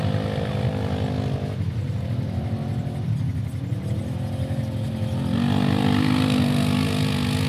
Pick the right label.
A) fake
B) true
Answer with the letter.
B